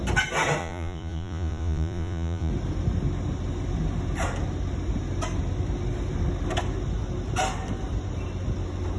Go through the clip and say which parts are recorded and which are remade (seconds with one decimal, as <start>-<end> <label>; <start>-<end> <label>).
0.0-0.6 recorded; 0.6-2.5 remade; 2.5-9.0 recorded